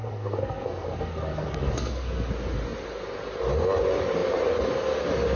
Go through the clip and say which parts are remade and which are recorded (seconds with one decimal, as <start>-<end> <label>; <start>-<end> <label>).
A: 0.0-2.3 remade; 2.3-5.4 recorded